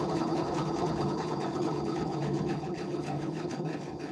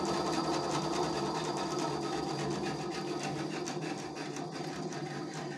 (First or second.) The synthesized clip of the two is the first